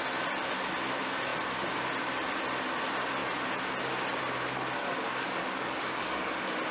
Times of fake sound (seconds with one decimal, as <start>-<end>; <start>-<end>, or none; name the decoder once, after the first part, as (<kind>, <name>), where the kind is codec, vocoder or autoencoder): 4.8-6.3 (codec, DAC)

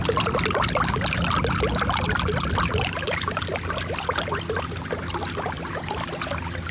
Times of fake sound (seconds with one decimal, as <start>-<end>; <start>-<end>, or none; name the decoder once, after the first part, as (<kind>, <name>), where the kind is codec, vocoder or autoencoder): none

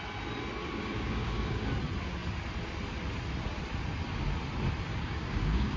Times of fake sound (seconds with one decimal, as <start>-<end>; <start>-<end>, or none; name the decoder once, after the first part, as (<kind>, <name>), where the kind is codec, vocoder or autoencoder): 0.6-1.7 (codec, DAC); 4.9-5.8

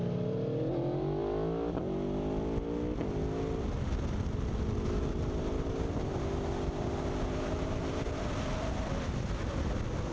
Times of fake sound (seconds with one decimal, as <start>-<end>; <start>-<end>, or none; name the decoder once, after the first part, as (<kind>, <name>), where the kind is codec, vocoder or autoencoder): none

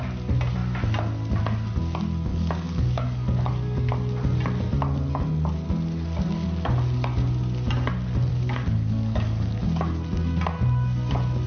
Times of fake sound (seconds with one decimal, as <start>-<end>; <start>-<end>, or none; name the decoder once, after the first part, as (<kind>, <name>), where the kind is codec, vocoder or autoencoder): 2.3-3.9 (codec, DAC); 8.3-9.6

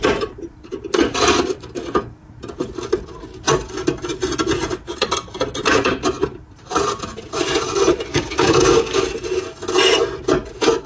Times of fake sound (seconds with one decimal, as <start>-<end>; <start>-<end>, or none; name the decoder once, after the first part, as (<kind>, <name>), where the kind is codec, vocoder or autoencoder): 8.1-9.0 (codec, DAC)

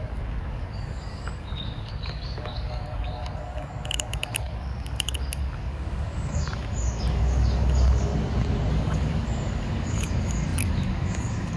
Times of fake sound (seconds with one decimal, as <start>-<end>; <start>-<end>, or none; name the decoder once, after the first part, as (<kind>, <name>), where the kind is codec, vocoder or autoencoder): 0.0-8.1 (codec, DAC); 8.7-11.6